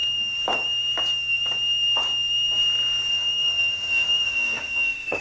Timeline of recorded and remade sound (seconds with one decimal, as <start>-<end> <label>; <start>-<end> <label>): 0.0-3.1 recorded; 3.1-5.2 remade